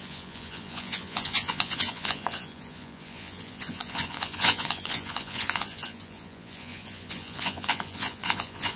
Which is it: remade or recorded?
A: remade